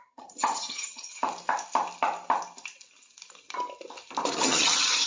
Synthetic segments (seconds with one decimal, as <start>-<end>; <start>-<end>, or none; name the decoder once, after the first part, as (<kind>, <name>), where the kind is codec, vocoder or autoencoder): 0.0-1.2 (vocoder, HiFi-GAN); 4.3-5.1